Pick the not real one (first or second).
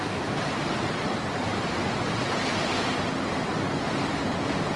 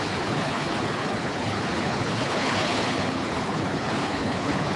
second